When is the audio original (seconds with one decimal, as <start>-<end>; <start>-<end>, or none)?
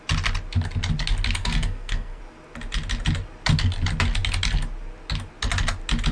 0.0-1.4; 2.2-6.1